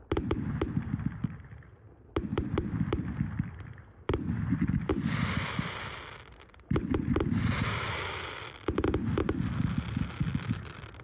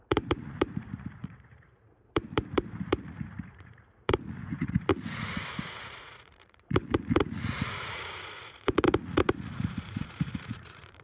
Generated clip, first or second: second